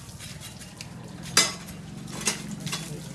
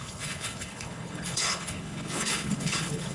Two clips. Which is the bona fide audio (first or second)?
first